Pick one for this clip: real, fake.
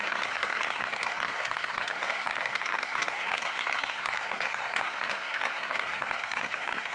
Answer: fake